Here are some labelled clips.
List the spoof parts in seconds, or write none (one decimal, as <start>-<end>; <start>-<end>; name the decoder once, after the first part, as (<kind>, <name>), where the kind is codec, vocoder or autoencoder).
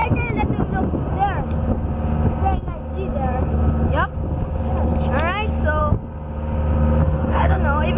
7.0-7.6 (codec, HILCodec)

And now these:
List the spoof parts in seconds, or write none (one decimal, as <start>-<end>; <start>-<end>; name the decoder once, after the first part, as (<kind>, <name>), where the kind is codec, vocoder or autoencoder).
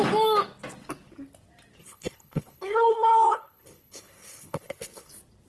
1.8-5.1 (codec, HILCodec)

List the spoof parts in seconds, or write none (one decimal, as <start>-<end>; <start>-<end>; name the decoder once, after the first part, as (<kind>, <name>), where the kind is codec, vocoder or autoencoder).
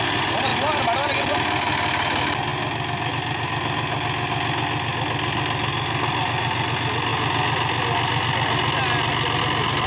none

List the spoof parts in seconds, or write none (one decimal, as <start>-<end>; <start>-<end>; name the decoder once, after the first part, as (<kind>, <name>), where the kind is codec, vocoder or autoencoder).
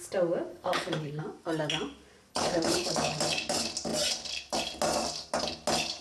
0.5-1.2 (codec, HILCodec); 2.3-3.2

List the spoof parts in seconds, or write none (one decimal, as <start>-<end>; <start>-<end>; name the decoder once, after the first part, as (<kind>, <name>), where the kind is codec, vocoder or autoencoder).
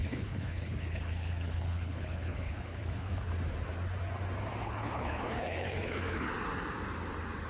0.0-3.3 (codec, HILCodec); 4.6-6.3